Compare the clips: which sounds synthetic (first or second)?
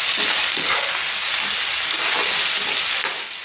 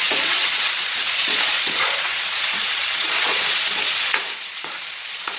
second